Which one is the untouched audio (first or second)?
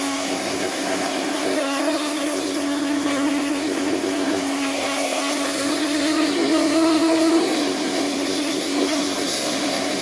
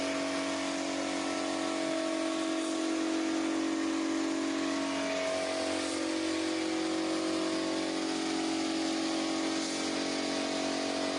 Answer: second